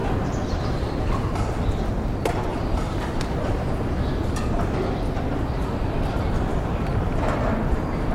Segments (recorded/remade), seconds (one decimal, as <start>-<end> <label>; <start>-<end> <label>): 0.0-1.5 remade; 1.5-2.5 recorded; 2.5-4.1 remade; 4.1-6.5 recorded; 6.5-7.5 remade; 7.5-8.1 recorded